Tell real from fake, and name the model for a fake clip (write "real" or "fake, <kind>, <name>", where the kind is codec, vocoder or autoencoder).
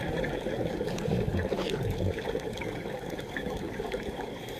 fake, codec, DAC